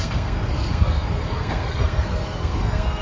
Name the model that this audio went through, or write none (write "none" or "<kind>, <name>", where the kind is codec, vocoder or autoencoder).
codec, SNAC